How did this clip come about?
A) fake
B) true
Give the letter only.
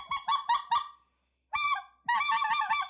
B